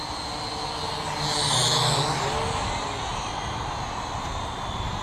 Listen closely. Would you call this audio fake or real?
real